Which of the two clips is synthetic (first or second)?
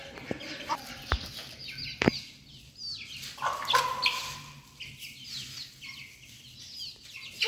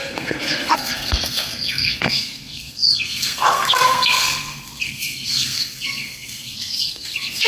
second